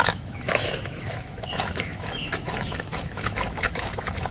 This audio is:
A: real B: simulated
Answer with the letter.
B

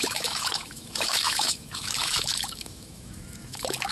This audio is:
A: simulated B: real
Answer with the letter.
A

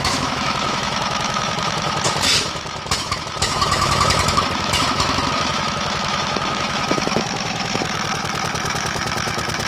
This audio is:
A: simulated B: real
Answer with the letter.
A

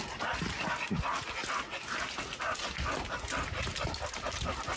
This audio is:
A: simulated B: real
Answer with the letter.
B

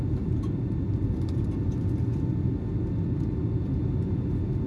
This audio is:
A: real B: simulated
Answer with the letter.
A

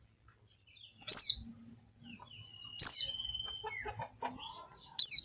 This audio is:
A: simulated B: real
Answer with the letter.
B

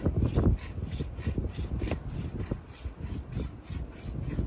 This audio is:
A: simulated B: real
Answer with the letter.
B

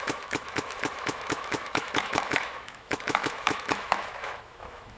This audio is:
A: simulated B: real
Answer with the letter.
A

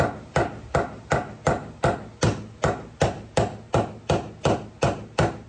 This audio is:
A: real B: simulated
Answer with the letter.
A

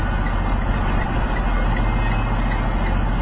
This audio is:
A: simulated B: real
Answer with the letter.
B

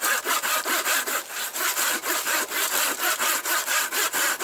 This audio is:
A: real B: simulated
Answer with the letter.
A